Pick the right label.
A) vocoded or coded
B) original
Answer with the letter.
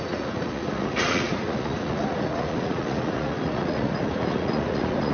A